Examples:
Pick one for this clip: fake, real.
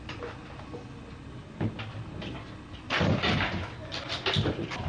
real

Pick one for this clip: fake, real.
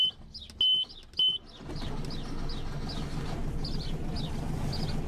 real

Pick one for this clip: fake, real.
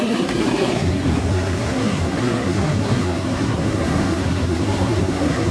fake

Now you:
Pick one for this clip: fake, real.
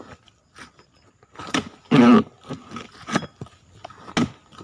real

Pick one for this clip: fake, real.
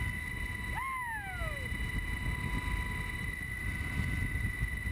real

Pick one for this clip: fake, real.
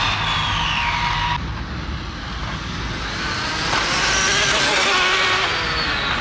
real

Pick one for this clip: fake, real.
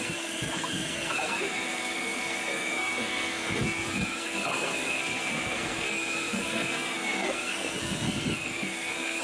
fake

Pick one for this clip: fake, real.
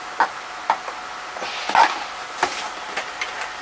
real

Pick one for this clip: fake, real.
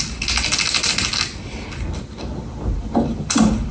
real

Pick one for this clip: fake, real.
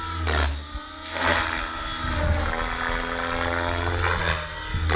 real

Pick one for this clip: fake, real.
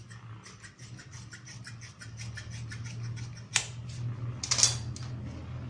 real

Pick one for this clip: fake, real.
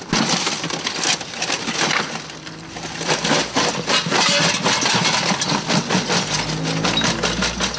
real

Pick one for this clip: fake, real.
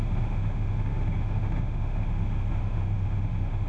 fake